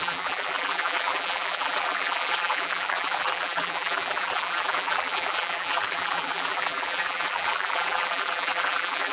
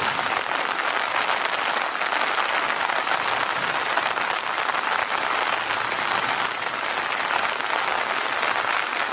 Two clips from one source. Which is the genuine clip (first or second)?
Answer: second